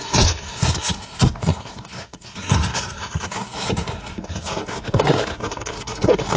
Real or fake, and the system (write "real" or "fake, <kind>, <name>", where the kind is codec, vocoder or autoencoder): fake, codec, SNAC